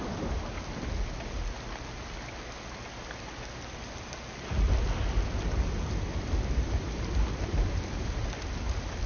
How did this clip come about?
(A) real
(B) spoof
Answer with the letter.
A